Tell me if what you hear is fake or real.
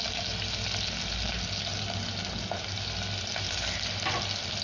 real